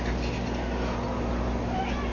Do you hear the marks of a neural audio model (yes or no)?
no